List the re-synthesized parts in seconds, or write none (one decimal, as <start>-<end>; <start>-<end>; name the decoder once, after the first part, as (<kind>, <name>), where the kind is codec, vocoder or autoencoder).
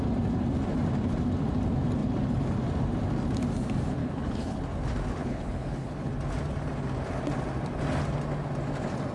4.0-4.6 (codec, HILCodec); 5.2-6.1